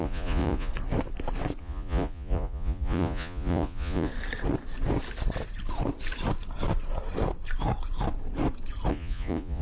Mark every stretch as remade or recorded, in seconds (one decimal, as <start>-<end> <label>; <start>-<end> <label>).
0.0-0.7 remade; 0.7-1.6 recorded; 1.6-4.1 remade; 4.1-8.9 recorded; 8.9-9.6 remade